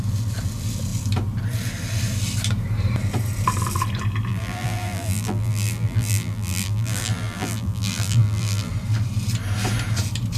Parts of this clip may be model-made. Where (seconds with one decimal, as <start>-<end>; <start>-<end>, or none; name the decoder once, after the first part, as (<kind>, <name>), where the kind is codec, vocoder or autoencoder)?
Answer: 4.3-8.7 (vocoder, BigVGAN v2)